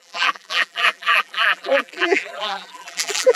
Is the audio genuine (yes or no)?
no